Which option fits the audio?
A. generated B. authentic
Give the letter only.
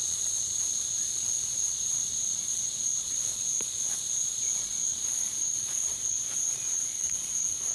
A